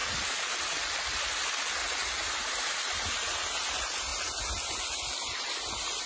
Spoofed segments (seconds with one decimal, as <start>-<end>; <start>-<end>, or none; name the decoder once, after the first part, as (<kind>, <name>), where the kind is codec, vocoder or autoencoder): none